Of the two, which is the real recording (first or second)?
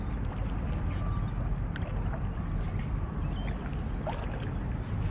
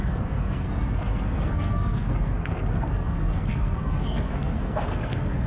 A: first